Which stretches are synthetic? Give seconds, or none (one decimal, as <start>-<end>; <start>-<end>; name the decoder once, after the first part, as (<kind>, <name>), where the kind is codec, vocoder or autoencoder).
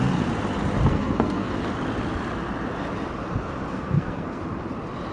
0.9-1.6 (codec, SNAC); 3.7-4.4